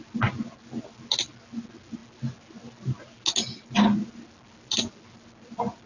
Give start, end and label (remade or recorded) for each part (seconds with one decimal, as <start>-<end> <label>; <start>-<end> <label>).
0.0-5.9 recorded